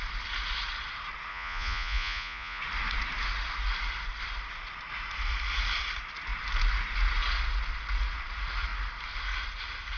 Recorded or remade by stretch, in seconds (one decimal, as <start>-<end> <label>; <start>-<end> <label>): 0.0-1.3 recorded; 1.3-2.6 remade; 2.6-10.0 recorded